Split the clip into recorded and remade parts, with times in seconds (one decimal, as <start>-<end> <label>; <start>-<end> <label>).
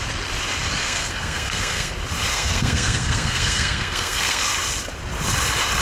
0.0-0.8 recorded; 0.8-1.9 remade; 1.9-2.3 recorded; 2.3-4.4 remade; 4.4-5.8 recorded